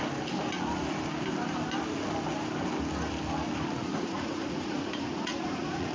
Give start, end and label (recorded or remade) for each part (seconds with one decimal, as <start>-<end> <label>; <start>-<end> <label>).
0.0-3.8 recorded; 3.8-5.9 remade